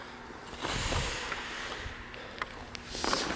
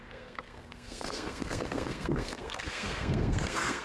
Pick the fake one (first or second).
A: second